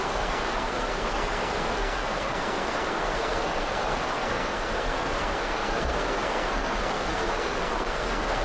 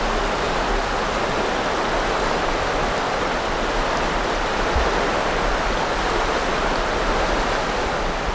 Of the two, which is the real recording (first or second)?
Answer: second